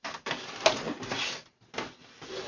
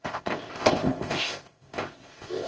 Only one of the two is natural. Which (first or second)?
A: first